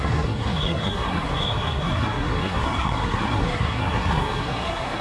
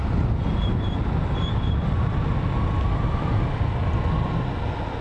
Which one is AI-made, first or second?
first